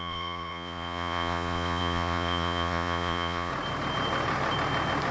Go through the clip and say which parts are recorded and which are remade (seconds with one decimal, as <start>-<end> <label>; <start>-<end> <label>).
0.0-3.5 remade; 3.5-5.1 recorded